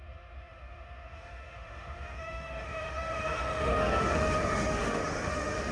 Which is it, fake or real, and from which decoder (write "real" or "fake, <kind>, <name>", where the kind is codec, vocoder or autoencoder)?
fake, autoencoder, DAC-VAE